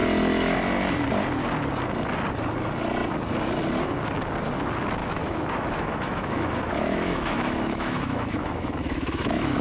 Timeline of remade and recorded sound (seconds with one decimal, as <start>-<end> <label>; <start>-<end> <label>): 0.0-5.0 recorded; 5.0-9.6 remade